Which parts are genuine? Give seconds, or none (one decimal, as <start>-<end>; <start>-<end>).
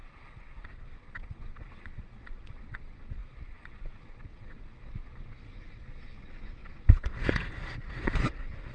none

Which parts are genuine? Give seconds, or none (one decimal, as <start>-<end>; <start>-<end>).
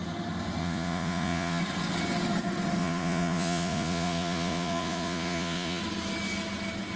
0.0-0.6; 1.6-2.8; 5.8-7.0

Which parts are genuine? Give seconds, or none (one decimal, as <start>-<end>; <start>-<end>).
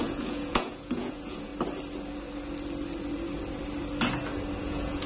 1.5-4.6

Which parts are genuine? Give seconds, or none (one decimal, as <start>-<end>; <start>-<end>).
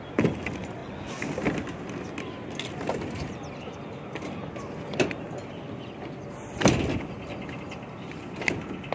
0.0-8.9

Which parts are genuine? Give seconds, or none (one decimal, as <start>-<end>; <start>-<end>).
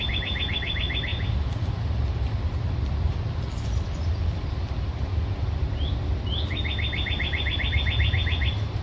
0.0-8.8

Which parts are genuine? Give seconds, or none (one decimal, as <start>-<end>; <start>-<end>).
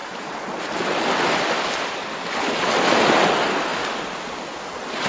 0.0-5.1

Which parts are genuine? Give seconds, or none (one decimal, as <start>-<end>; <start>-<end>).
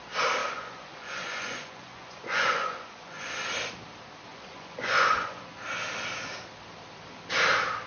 0.0-0.4; 3.3-4.3; 5.5-7.9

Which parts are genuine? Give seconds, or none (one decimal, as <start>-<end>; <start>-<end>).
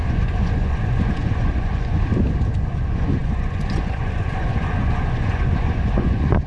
2.1-2.6